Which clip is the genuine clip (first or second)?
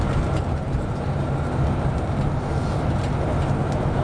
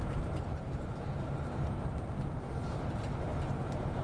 first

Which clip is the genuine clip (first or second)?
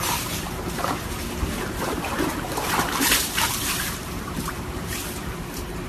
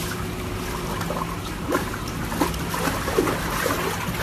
second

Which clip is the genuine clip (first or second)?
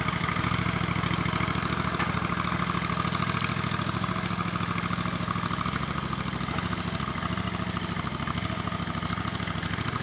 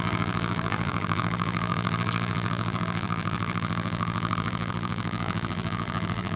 first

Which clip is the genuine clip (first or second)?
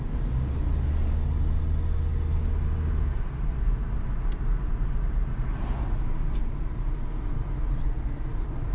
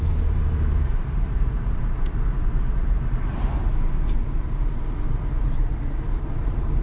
first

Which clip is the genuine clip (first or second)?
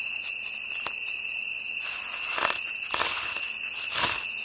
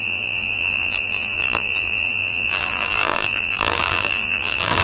first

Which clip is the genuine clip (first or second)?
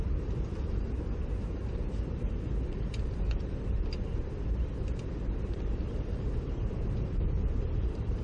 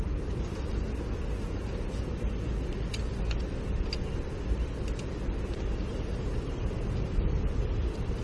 second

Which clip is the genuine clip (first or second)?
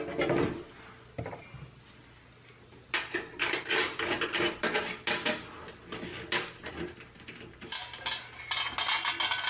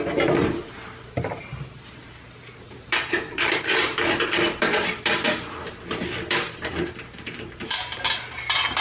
first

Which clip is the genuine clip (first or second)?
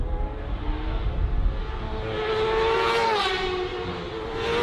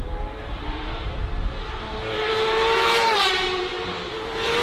first